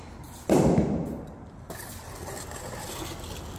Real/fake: real